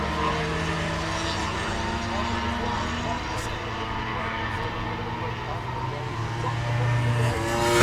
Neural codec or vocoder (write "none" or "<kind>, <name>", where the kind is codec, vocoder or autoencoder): none